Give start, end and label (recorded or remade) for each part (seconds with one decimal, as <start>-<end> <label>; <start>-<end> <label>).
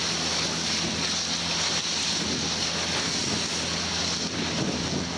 0.0-5.2 recorded